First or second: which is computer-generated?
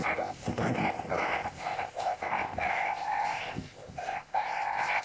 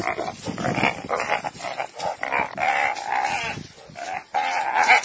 first